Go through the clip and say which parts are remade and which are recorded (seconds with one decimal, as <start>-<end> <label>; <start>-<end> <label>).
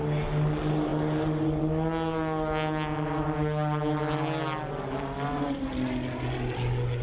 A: 0.0-7.0 recorded